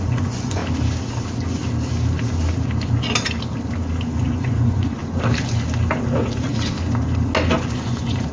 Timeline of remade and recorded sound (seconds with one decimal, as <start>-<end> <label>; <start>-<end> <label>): 0.0-0.6 remade; 0.6-4.1 recorded; 4.1-5.0 remade; 5.0-7.7 recorded; 7.7-8.3 remade